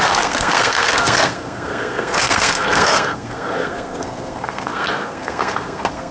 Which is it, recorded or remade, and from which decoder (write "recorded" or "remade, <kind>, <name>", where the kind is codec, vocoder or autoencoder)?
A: remade, codec, SNAC